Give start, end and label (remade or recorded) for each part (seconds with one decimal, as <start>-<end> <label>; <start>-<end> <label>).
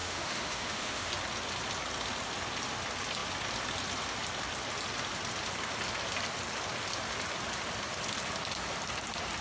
0.0-1.1 remade; 1.1-9.4 recorded